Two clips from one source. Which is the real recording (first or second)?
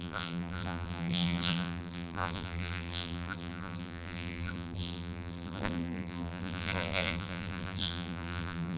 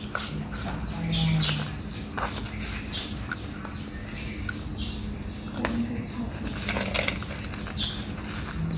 second